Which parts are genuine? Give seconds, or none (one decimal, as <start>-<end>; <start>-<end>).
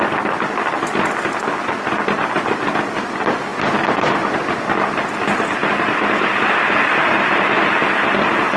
0.0-5.6; 7.6-8.6